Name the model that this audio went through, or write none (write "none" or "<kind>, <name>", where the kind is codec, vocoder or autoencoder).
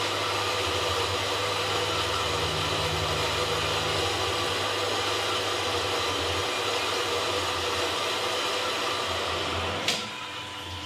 none